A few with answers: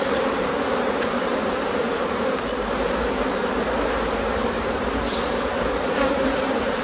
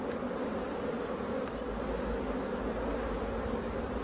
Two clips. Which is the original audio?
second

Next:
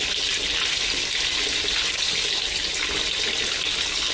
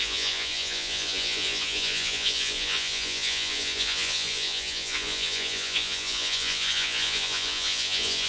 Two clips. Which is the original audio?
first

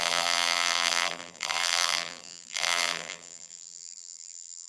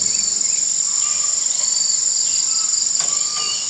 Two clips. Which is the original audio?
second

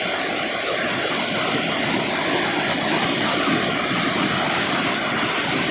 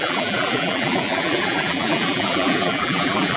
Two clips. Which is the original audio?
first